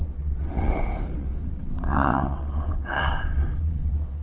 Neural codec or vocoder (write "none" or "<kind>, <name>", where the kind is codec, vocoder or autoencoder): vocoder, WaveNeXt